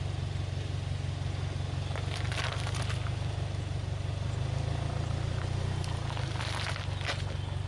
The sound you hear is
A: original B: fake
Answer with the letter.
A